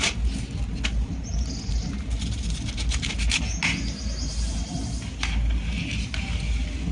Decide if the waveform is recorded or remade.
recorded